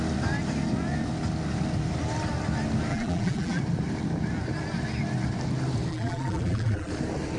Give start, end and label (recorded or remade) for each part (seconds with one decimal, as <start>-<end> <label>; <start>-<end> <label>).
0.0-2.9 recorded; 2.9-3.6 remade; 3.6-5.9 recorded; 5.9-6.9 remade; 6.9-7.4 recorded